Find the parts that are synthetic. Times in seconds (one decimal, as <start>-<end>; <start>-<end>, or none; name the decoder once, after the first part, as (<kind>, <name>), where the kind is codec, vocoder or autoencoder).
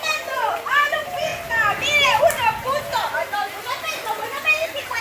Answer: none